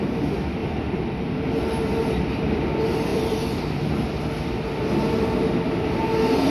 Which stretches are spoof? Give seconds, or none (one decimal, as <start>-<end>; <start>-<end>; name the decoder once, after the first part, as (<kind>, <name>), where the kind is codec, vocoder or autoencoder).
0.6-1.4 (vocoder, BigVGAN v2); 3.1-3.8

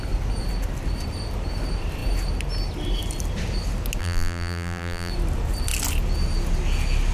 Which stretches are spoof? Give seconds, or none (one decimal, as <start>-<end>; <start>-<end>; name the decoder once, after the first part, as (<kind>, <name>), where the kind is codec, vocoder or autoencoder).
4.0-5.1 (vocoder, BigVGAN v2)